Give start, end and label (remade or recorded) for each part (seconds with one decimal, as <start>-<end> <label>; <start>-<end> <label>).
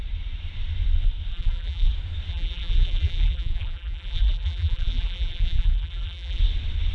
0.0-1.3 recorded; 1.3-1.9 remade; 1.9-2.3 recorded; 2.3-6.4 remade; 6.4-6.9 recorded